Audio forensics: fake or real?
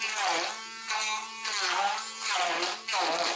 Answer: real